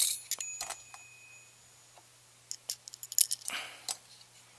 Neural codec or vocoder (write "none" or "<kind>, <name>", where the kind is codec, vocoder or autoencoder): none